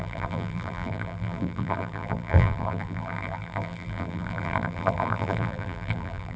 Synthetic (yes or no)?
yes